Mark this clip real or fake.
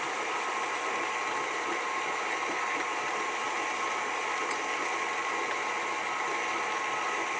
real